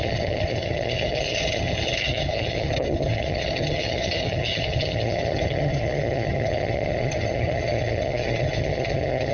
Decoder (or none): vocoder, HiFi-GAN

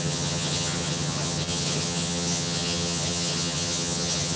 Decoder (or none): vocoder, HiFi-GAN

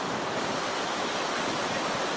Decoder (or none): none